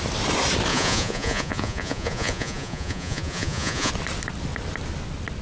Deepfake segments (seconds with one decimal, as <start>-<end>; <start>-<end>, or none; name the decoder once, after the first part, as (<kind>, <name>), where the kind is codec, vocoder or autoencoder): 0.7-3.9 (vocoder, Vocos)